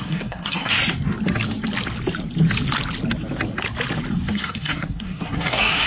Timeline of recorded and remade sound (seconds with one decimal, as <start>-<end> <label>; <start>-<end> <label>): 0.0-0.8 remade; 0.8-4.3 recorded; 4.3-5.9 remade